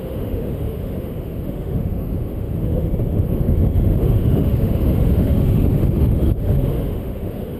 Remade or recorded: remade